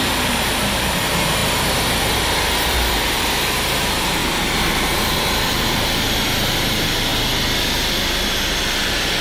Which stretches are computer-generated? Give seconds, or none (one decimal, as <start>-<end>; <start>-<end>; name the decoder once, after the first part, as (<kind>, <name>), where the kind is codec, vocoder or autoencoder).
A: 0.0-1.4 (vocoder, BigVGAN v2); 2.9-4.2; 4.7-7.1; 8.6-9.2

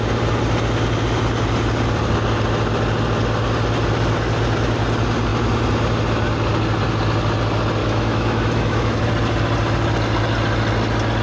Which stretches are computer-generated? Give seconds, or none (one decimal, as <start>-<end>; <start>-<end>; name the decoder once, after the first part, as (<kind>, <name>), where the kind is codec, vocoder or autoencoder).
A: 7.8-9.0 (autoencoder, DAC-VAE)